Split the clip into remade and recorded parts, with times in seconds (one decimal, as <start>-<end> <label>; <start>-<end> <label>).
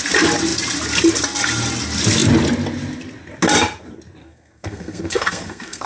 0.0-4.2 recorded; 4.2-5.9 remade